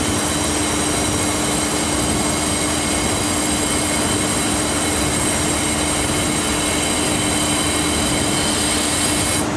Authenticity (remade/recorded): recorded